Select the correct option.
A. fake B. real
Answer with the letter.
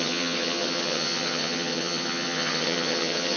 A